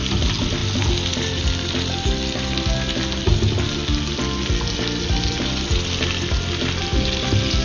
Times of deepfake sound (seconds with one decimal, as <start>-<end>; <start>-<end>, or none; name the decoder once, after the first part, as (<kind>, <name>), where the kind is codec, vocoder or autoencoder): none